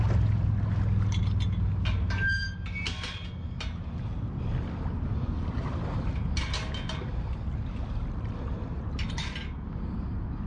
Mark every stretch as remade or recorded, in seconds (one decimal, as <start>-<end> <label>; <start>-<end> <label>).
0.0-10.5 recorded